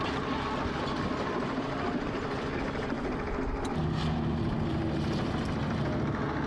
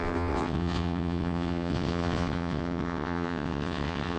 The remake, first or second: second